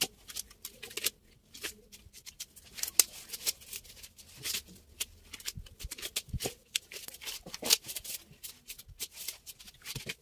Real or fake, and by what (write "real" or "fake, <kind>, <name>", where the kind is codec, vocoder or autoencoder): real